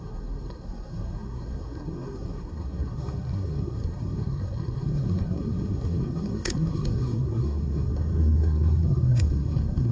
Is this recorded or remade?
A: remade